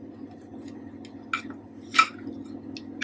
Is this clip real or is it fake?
real